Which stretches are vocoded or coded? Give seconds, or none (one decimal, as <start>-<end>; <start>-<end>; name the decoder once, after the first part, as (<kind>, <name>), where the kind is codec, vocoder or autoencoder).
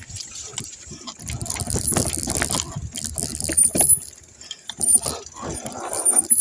none